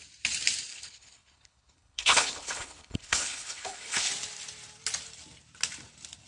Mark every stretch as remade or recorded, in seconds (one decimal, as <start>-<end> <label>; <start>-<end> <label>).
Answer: 0.0-0.7 recorded; 0.7-4.1 remade; 4.1-6.3 recorded